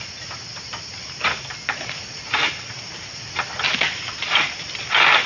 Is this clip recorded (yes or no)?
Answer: yes